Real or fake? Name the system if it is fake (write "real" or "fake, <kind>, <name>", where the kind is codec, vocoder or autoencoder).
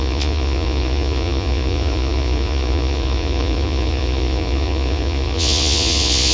fake, vocoder, Vocos